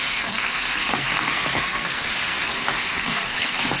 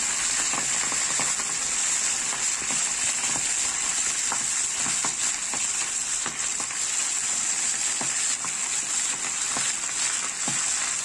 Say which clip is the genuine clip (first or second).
second